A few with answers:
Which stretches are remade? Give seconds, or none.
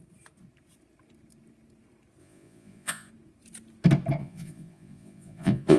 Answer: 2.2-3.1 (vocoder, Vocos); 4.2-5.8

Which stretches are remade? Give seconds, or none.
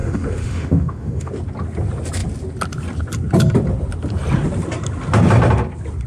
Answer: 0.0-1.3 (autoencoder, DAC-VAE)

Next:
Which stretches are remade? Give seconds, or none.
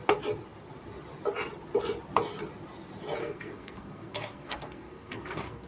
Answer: 3.2-5.7 (codec, SNAC)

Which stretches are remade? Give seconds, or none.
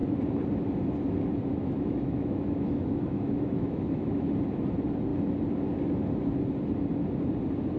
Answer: 1.5-4.3 (autoencoder, DAC-VAE)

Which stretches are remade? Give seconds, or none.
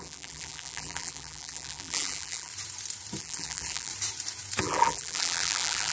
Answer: 0.0-2.5 (vocoder, BigVGAN v2); 3.2-3.9; 4.6-5.9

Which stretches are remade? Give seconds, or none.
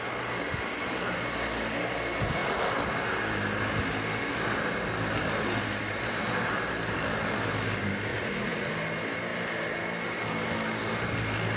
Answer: 8.1-8.7 (vocoder, Vocos)